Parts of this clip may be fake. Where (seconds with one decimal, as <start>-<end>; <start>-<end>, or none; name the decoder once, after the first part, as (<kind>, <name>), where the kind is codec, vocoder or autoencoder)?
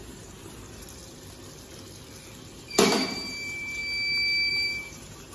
0.0-1.0 (vocoder, BigVGAN v2); 3.1-3.8; 4.5-5.3